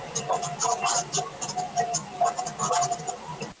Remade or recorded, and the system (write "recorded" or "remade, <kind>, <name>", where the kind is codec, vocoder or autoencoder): recorded